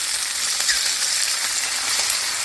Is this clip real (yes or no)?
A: yes